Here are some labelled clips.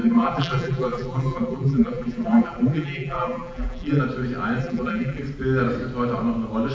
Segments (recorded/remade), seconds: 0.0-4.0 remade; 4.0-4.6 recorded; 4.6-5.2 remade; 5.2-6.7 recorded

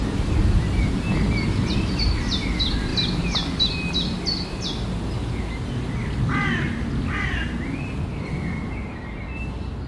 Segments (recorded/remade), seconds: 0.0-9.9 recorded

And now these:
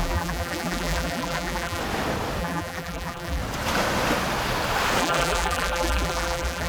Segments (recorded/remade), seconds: 0.0-1.8 remade; 1.8-2.4 recorded; 2.4-3.4 remade; 3.4-5.0 recorded; 5.0-6.7 remade